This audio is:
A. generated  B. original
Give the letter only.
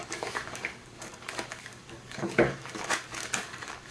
A